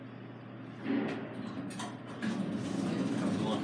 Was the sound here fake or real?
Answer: real